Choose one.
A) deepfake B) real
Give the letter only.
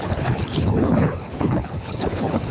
A